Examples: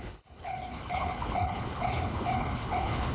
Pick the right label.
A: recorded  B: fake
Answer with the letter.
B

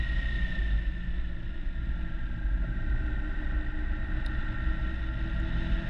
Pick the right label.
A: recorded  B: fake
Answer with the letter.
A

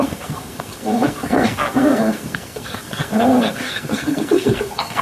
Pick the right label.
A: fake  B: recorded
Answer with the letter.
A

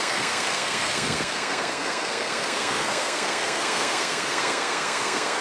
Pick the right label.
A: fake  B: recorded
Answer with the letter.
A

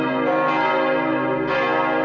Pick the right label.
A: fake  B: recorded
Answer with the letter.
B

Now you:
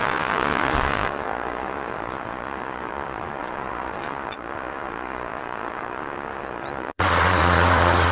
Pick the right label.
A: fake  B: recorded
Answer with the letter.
A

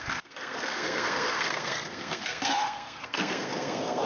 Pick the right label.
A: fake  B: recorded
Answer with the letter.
A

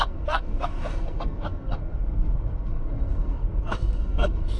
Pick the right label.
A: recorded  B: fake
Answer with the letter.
B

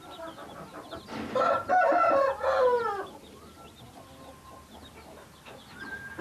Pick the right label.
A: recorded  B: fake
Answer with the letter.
A